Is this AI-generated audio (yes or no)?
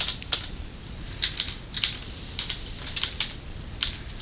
no